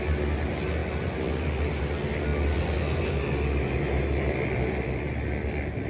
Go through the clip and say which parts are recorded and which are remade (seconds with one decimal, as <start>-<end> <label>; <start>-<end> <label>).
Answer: 0.0-5.9 recorded